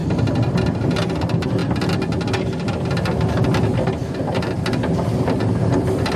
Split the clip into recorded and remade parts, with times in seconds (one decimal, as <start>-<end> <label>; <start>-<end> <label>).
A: 0.0-6.2 recorded